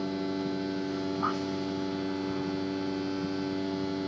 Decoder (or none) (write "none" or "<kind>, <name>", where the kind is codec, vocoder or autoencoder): none